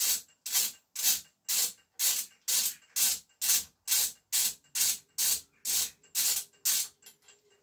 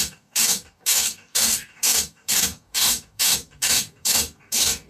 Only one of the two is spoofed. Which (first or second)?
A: second